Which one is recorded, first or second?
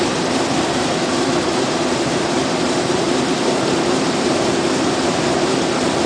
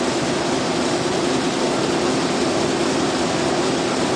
second